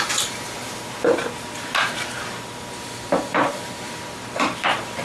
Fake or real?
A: fake